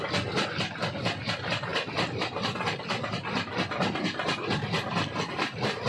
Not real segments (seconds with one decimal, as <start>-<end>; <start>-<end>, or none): none